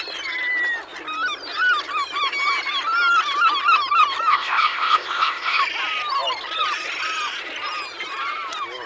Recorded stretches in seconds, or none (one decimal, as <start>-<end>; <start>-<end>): 0.0-4.3; 5.6-8.9

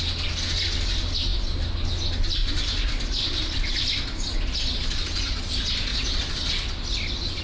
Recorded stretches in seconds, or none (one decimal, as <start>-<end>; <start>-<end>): 0.0-2.4; 5.4-7.4

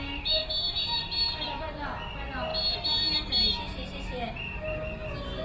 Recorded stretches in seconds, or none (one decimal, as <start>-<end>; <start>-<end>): 0.0-5.4

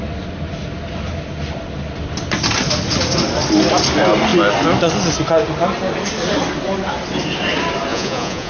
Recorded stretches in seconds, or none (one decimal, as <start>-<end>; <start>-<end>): 0.0-7.9

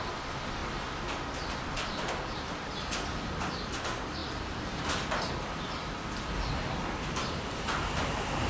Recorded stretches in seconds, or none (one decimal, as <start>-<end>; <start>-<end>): 0.0-8.5

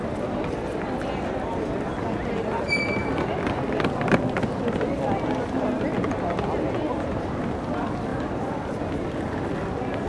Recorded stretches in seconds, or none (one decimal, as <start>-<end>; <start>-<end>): 0.0-3.0; 5.3-8.1; 8.6-10.1